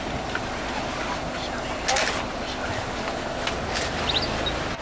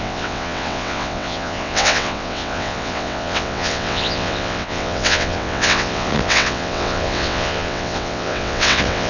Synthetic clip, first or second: second